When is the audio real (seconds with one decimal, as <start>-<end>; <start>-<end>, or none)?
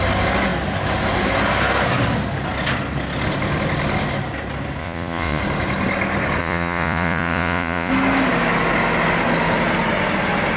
0.0-4.8; 5.4-6.4; 7.9-10.6